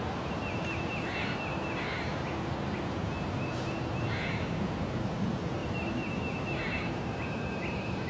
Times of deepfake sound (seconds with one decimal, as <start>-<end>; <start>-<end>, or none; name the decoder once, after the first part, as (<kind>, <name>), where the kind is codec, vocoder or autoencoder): none